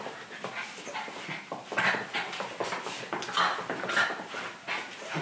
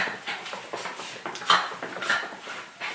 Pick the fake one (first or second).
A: second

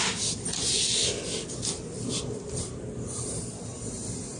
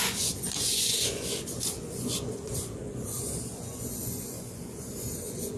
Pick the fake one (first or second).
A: second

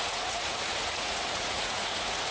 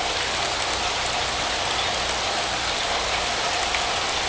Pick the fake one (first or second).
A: first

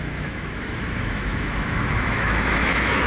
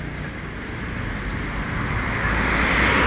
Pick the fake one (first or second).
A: first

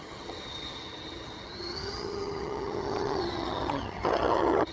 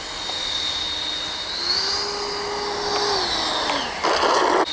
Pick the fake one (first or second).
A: first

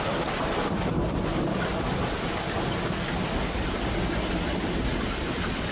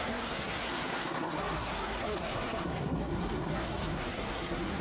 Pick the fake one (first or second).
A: second